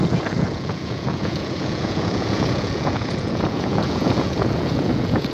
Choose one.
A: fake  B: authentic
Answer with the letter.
A